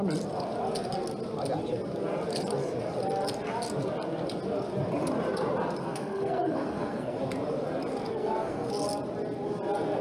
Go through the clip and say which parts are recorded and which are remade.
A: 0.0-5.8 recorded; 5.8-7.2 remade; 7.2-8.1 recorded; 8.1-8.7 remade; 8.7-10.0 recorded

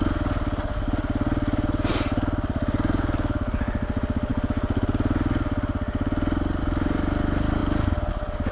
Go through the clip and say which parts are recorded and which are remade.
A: 0.0-8.5 recorded

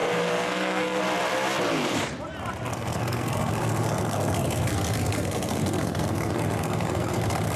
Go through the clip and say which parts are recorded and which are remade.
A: 0.0-1.0 remade; 1.0-2.7 recorded; 2.7-7.6 remade

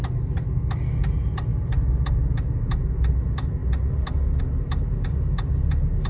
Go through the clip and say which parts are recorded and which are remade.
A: 0.0-6.1 recorded